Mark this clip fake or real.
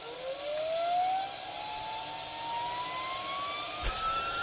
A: real